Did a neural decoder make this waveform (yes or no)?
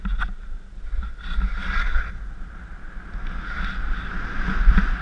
no